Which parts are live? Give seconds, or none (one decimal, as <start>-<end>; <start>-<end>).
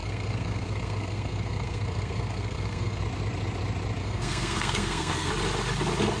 3.0-4.0; 5.3-6.2